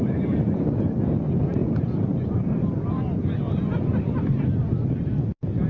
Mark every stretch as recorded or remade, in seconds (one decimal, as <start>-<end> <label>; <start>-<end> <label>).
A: 0.0-5.7 recorded